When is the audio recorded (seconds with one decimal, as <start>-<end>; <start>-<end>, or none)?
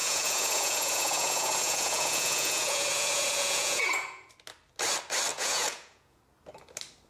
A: 4.3-5.3; 6.2-7.1